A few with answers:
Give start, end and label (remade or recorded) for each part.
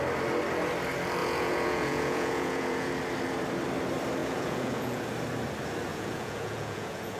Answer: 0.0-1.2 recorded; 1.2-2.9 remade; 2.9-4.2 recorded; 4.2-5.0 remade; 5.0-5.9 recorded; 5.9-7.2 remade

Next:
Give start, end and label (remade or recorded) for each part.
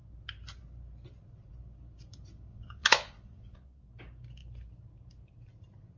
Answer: 0.0-2.5 recorded; 2.5-3.9 remade; 3.9-6.0 recorded